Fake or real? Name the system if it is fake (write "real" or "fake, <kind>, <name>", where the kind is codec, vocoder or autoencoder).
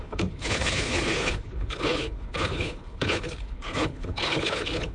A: fake, codec, HILCodec